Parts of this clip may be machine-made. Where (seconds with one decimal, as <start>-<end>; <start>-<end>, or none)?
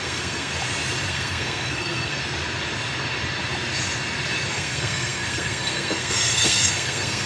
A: 0.0-0.5; 1.1-2.2; 4.5-7.3